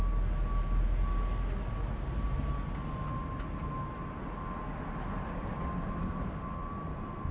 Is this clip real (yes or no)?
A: yes